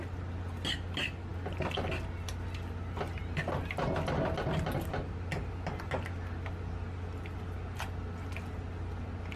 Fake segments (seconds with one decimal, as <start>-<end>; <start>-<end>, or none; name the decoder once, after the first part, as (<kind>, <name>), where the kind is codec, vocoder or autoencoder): none